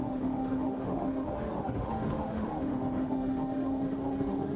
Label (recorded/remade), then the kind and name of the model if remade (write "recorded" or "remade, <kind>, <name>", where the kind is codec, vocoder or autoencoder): remade, autoencoder, DAC-VAE